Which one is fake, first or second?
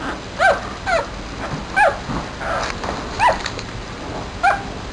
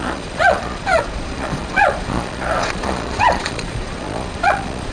second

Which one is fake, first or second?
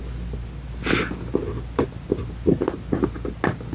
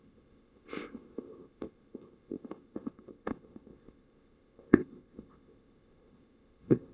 second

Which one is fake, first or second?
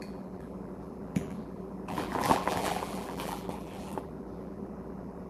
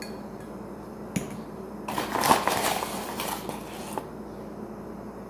first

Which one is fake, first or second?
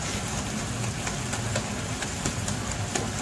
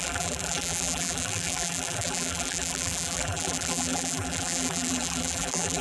second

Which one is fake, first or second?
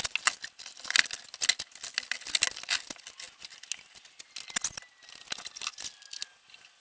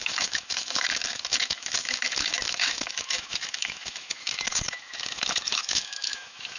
second